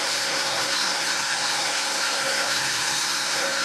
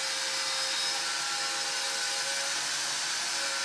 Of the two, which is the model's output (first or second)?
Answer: first